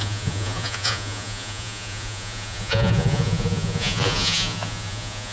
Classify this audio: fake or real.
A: fake